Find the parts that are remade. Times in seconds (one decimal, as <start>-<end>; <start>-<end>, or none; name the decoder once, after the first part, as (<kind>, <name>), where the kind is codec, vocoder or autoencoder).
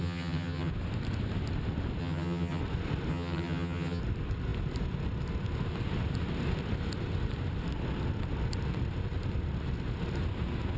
0.0-0.7 (vocoder, HiFi-GAN); 2.0-2.6; 3.1-4.0